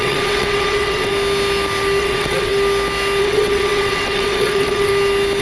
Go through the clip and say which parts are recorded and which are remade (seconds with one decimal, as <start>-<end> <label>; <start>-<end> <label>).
0.0-1.1 remade; 1.1-2.0 recorded; 2.0-2.5 remade; 2.5-3.2 recorded; 3.2-4.9 remade; 4.9-5.4 recorded

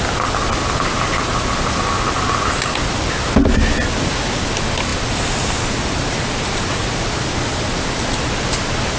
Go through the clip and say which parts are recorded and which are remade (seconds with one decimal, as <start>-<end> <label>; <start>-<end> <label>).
0.0-9.0 recorded